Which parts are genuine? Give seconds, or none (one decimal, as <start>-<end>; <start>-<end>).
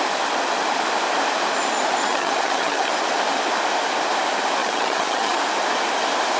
0.0-2.0; 2.9-4.6; 5.4-6.4